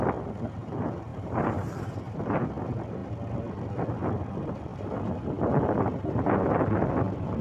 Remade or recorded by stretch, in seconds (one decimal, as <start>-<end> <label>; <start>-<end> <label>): 0.0-1.1 recorded; 1.1-2.5 remade; 2.5-7.4 recorded